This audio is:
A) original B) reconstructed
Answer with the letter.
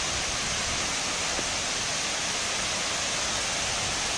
A